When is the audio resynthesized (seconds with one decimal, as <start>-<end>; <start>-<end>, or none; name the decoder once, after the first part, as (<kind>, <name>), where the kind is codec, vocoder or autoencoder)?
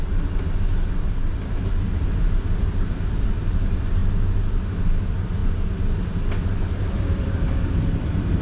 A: 0.0-0.7 (vocoder, BigVGAN v2); 2.3-5.4; 6.6-8.4